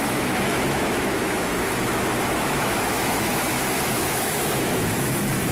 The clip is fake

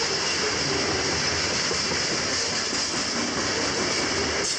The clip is real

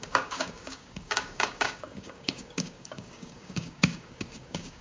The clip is fake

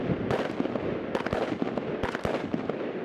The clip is real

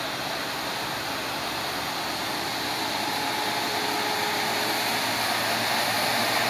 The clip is real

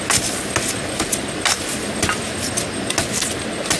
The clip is real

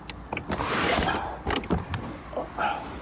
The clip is fake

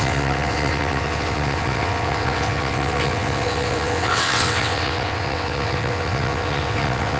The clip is fake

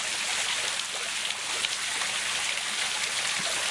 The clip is real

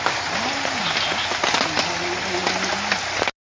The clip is real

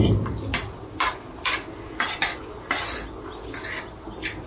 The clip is real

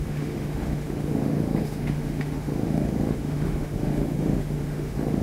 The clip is fake